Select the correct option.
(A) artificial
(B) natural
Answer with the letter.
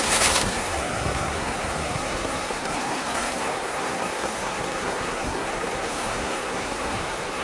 A